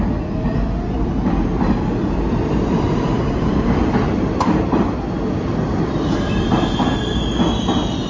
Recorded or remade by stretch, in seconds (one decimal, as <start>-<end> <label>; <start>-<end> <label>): 0.0-2.0 recorded; 2.0-3.9 remade; 3.9-8.1 recorded